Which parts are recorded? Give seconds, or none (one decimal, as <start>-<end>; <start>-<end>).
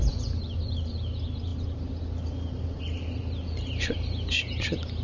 0.0-5.0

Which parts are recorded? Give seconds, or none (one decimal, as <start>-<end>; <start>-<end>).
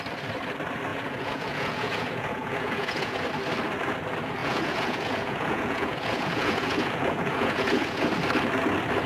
0.0-0.9; 3.3-4.4; 8.1-9.1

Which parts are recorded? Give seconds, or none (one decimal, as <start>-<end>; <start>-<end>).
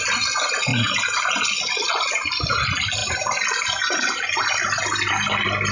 0.0-5.7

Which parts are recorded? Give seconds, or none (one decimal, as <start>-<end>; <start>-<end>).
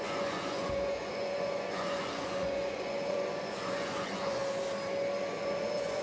4.4-5.2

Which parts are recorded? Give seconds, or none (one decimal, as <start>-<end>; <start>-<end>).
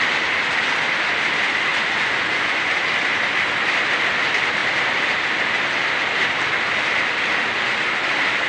0.0-1.7; 2.7-8.5